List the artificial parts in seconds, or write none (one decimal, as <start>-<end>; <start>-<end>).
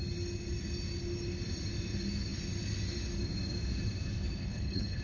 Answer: 4.4-5.0